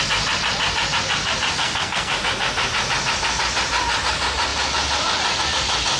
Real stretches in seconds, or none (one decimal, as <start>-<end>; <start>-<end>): 0.0-1.6; 2.1-6.0